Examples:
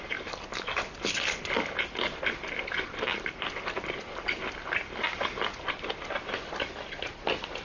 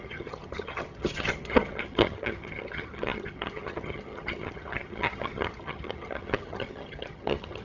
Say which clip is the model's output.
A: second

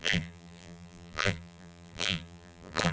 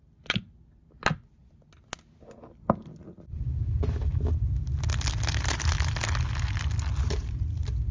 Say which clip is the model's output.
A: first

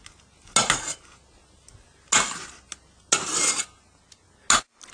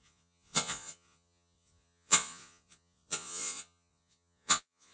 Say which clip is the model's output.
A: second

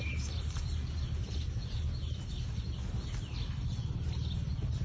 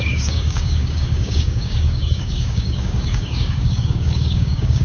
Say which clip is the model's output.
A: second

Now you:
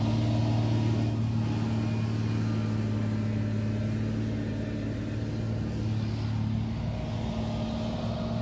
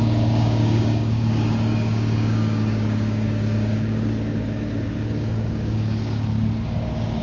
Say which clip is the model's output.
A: second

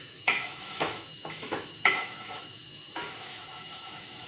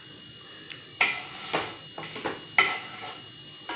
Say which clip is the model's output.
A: first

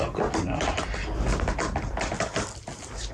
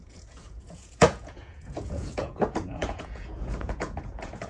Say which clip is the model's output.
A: second